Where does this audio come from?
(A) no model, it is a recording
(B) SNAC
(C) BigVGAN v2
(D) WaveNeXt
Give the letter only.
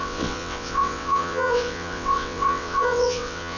D